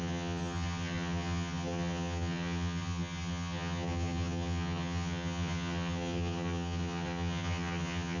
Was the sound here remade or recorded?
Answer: remade